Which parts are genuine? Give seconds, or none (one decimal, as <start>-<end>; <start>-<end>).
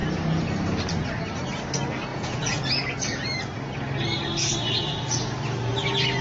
0.0-2.1; 2.7-6.2